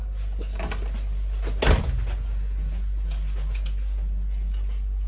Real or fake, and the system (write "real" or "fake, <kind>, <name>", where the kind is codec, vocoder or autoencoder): real